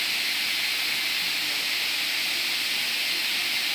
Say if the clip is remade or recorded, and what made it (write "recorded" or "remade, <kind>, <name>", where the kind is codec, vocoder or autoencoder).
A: recorded